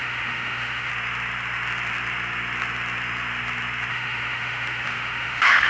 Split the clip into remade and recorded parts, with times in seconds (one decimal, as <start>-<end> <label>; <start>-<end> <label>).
0.0-0.9 remade; 0.9-3.9 recorded; 3.9-5.7 remade